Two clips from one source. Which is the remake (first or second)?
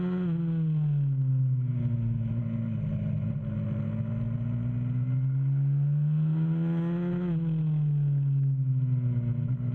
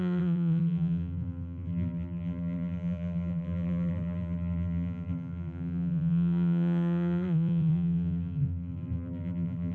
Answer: second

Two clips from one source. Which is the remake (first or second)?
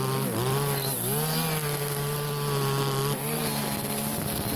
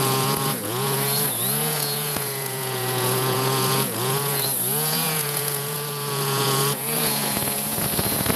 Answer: second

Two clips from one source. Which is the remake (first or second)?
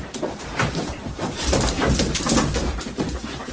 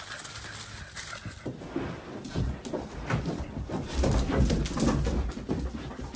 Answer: first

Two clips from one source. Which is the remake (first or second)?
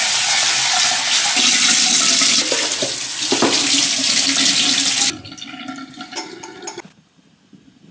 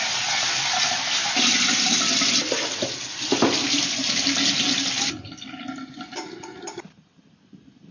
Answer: second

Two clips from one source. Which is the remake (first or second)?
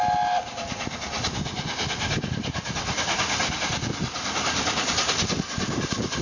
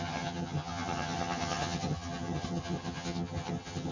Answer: second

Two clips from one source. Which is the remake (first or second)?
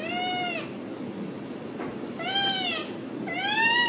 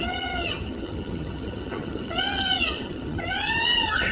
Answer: second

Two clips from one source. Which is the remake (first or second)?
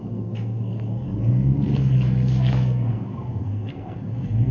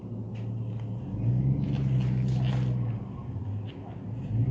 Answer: first